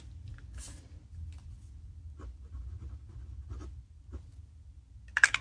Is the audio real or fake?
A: real